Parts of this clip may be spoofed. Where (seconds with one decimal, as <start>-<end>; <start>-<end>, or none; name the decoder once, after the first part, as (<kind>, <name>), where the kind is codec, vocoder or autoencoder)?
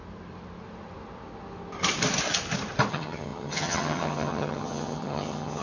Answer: 2.9-5.6 (vocoder, HiFi-GAN)